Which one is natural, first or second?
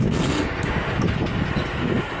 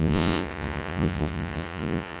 first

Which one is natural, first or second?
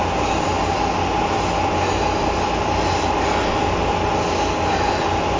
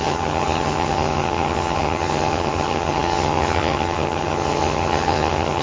first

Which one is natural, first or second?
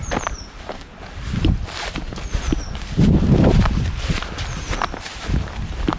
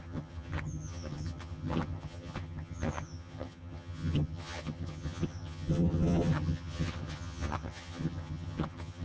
first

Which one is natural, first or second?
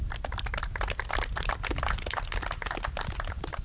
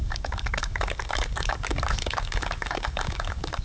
first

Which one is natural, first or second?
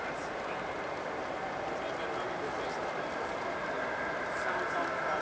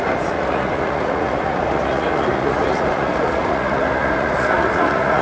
first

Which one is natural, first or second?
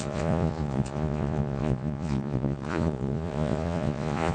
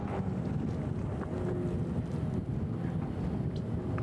second